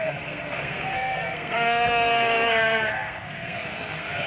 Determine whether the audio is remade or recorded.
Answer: remade